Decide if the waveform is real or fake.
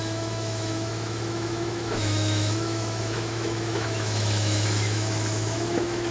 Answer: fake